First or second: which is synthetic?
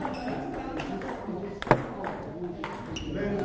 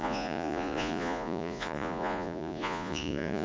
second